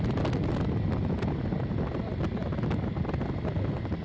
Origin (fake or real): real